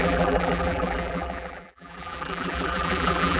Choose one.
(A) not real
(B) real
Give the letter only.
A